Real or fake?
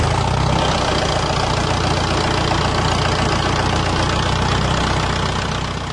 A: real